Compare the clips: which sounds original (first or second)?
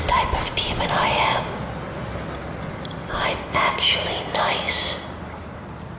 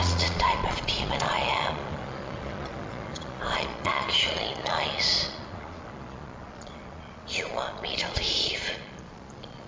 first